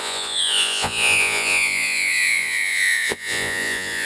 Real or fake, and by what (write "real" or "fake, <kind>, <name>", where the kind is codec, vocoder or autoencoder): fake, vocoder, Vocos